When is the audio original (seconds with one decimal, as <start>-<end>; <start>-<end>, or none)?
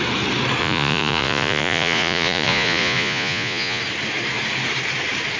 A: 0.0-0.6; 3.8-5.4